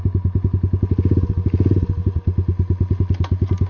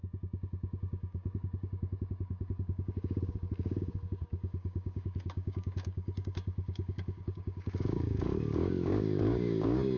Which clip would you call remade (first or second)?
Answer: second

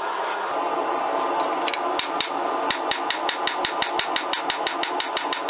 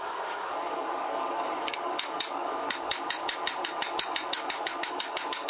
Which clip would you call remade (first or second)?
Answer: second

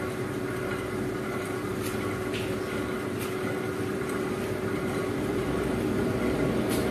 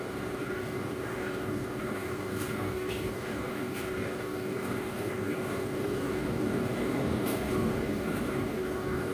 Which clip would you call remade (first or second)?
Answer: second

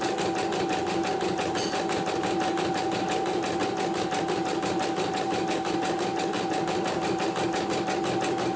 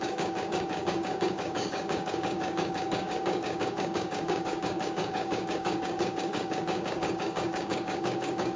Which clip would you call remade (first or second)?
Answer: second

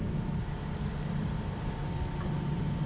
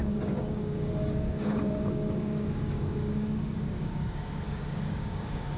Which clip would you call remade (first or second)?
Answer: second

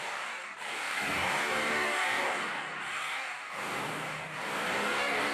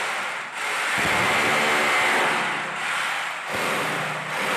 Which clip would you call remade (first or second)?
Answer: first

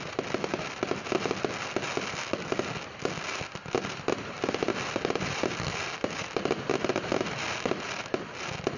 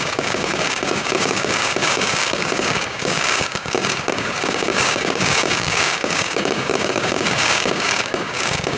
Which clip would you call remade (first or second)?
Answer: second